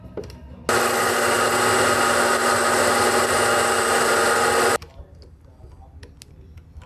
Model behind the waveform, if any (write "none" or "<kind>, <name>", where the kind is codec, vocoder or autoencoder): none